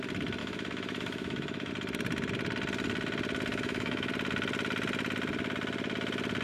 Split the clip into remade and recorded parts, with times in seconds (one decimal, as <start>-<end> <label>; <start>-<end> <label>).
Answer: 0.0-0.4 recorded; 0.4-1.7 remade; 1.7-3.5 recorded; 3.5-4.1 remade; 4.1-6.4 recorded